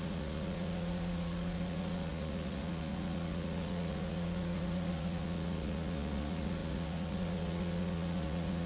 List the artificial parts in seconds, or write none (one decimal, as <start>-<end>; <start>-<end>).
0.0-8.7